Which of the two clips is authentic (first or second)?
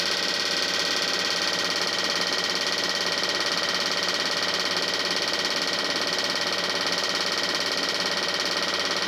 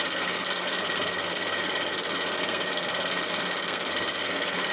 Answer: first